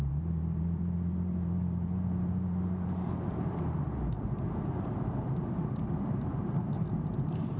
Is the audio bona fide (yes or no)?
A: no